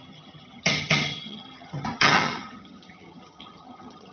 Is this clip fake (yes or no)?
yes